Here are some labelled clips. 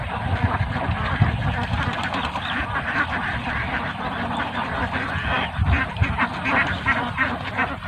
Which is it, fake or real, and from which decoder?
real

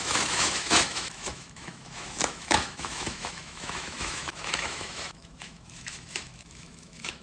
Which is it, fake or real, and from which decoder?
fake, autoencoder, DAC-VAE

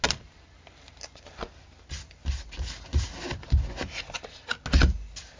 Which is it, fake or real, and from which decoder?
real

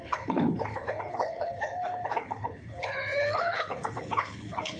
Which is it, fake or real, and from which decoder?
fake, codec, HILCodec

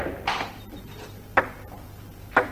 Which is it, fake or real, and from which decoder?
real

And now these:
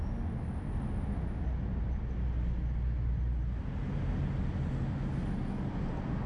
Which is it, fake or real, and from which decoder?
real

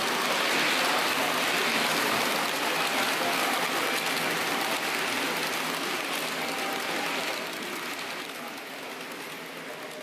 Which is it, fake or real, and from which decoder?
real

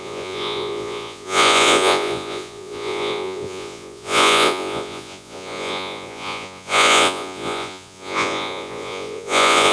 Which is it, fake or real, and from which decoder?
fake, vocoder, Vocos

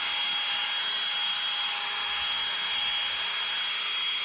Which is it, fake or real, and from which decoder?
real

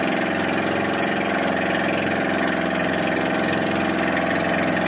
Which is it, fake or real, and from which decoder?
real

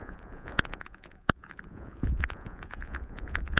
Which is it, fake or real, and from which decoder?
fake, vocoder, Vocos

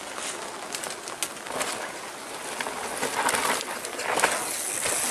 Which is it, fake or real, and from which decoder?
real